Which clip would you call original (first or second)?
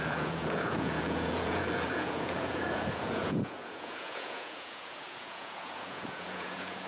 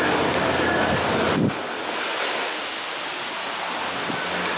second